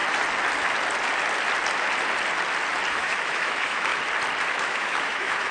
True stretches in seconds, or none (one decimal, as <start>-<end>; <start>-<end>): 0.0-2.9; 3.9-4.5